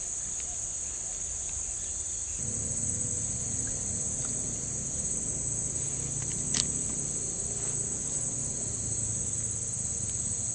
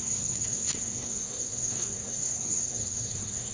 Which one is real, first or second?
first